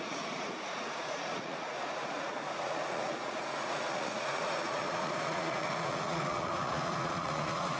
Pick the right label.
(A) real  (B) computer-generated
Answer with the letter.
B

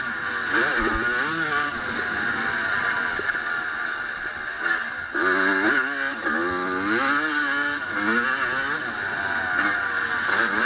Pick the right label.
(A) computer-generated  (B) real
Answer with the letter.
B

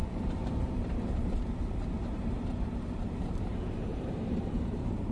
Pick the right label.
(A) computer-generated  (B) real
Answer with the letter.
A